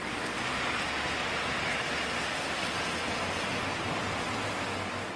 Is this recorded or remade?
recorded